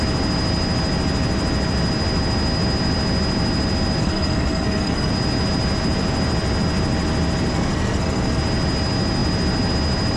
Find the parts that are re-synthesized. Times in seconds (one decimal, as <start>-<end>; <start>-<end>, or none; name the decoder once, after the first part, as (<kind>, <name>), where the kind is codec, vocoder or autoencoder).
4.0-5.1 (codec, SNAC); 7.5-8.4